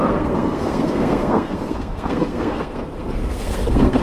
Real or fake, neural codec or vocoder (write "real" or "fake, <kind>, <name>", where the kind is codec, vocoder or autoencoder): fake, codec, SNAC